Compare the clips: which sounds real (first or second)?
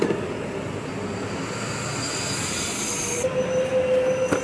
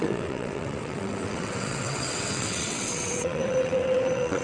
first